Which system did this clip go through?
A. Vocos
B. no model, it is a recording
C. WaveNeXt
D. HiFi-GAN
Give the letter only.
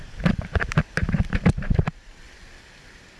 B